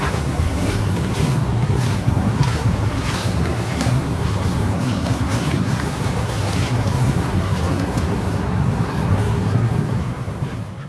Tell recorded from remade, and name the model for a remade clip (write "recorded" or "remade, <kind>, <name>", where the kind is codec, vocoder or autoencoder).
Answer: remade, codec, SNAC